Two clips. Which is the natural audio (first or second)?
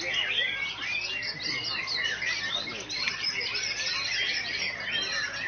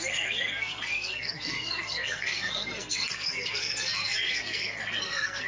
first